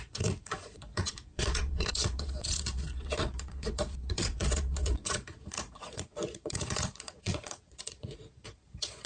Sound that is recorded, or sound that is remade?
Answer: remade